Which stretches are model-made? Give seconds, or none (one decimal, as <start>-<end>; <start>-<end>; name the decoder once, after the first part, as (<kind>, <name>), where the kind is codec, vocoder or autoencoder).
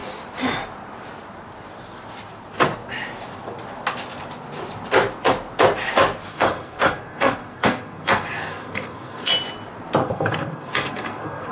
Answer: 6.3-9.3 (codec, SNAC); 10.0-11.5